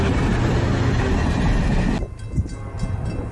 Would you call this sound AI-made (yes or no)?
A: no